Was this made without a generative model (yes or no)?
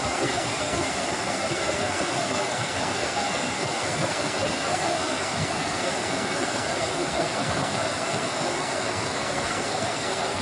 no